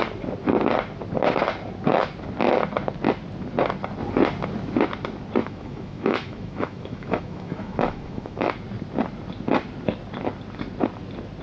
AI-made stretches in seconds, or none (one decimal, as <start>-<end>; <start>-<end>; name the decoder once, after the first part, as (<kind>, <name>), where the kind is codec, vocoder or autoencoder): 5.4-8.5 (autoencoder, DAC-VAE)